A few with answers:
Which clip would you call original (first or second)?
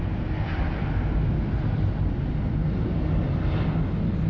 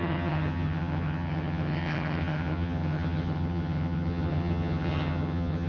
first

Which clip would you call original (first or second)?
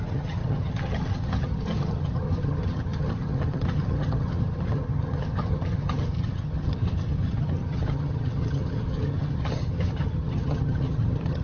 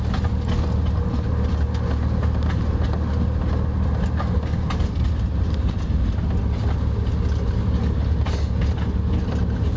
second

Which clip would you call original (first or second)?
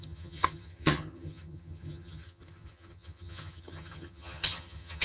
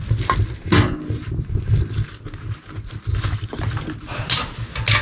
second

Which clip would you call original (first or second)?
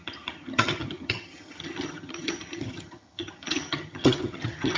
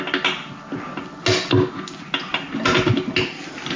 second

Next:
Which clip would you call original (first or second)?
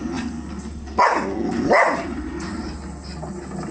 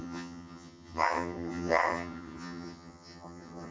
first